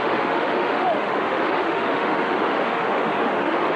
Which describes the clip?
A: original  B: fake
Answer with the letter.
B